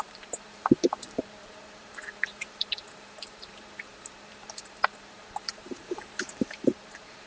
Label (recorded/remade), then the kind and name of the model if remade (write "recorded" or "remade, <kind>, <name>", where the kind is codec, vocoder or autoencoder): remade, vocoder, BigVGAN v2